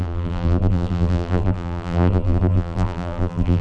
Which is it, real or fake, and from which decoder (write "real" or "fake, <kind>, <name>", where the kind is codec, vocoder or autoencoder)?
fake, vocoder, BigVGAN v2